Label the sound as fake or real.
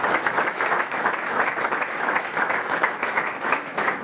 fake